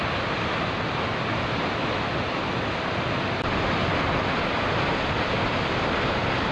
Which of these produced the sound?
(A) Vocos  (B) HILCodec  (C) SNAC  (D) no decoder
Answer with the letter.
D